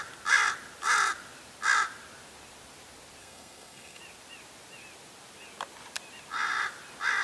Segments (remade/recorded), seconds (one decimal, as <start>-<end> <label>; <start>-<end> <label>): 0.0-3.2 recorded; 3.2-4.0 remade; 4.0-7.2 recorded